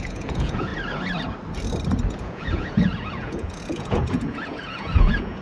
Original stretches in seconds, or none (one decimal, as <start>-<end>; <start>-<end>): 0.7-2.1